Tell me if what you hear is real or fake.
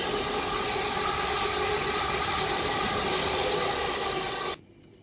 real